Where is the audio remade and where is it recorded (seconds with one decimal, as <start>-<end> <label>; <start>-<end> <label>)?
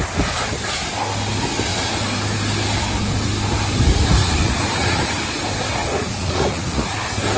0.0-4.2 recorded; 4.2-5.0 remade; 5.0-5.8 recorded; 5.8-6.8 remade; 6.8-7.4 recorded